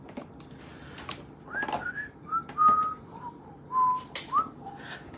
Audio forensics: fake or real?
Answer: real